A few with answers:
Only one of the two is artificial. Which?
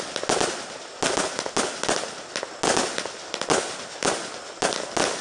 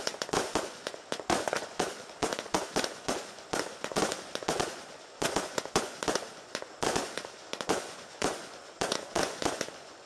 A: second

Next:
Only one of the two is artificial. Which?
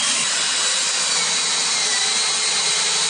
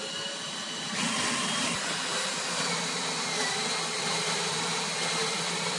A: second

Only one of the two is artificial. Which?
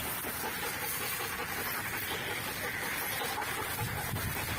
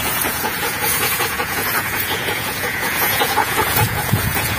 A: second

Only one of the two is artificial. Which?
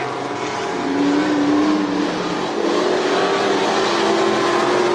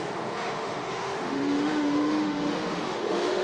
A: second